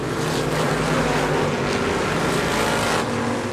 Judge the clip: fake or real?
real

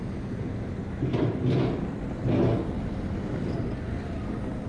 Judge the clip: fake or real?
real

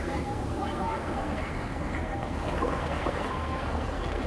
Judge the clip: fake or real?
fake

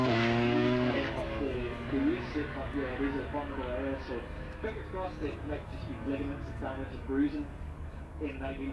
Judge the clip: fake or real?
fake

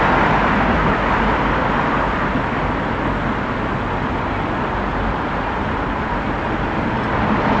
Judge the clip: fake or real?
real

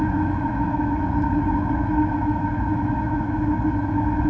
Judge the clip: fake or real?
fake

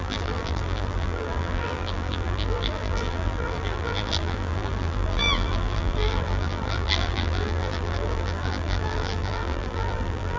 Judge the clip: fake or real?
fake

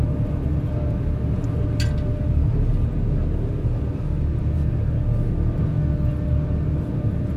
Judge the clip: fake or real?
real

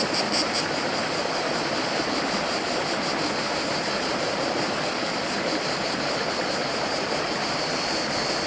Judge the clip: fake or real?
real